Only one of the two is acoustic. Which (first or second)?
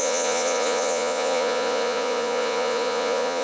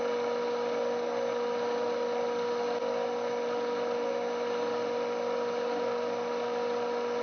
second